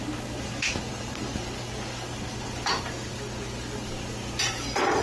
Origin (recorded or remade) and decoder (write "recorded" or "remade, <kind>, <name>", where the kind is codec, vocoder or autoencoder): recorded